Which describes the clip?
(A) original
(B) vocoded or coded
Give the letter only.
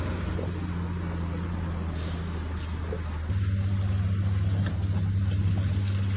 A